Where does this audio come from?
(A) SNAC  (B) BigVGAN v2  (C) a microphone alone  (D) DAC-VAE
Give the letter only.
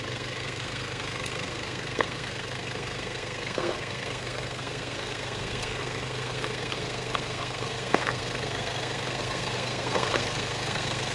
A